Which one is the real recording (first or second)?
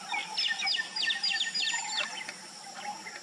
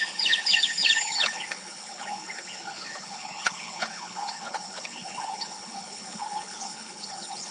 first